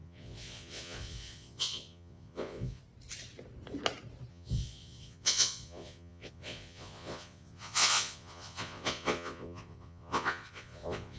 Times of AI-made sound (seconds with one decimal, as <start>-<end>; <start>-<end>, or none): 0.0-2.8; 4.3-11.2